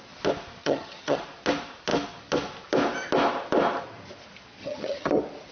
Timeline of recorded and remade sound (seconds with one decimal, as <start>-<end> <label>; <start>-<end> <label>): 0.0-0.6 recorded; 0.6-1.2 remade; 1.2-4.6 recorded; 4.6-5.1 remade; 5.1-5.5 recorded